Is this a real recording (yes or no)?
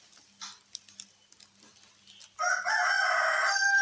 yes